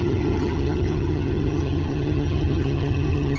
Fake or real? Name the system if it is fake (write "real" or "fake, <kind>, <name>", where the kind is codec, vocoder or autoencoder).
fake, vocoder, HiFi-GAN